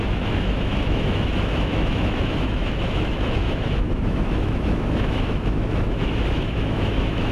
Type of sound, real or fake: fake